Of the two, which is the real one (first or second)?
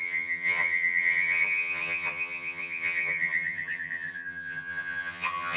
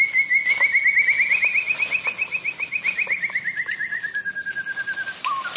second